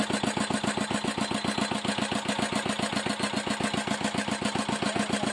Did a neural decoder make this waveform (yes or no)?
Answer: no